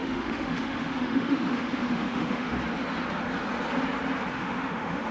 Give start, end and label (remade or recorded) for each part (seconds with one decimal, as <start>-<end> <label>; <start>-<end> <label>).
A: 0.0-2.5 remade; 2.5-4.3 recorded; 4.3-5.1 remade